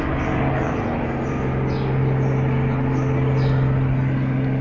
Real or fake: real